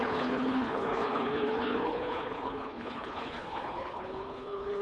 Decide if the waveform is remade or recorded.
remade